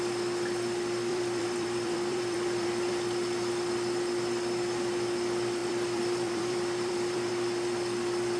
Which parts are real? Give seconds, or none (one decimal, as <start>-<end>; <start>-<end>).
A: 0.0-1.1; 2.9-5.6; 7.3-8.4